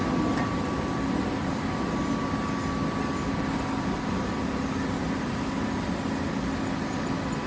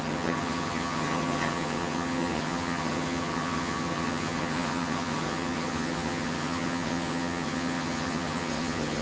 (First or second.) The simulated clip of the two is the second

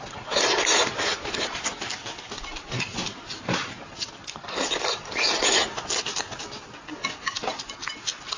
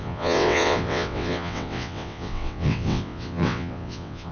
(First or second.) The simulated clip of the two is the second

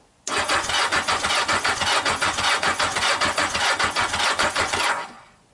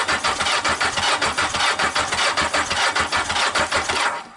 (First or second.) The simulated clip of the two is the first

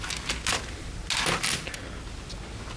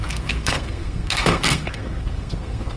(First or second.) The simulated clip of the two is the second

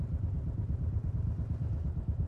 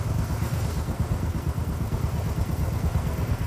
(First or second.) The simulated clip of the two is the second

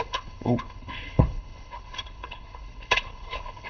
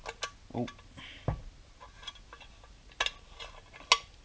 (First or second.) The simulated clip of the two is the first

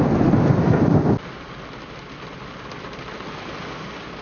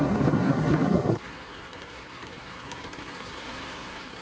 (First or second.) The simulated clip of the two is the second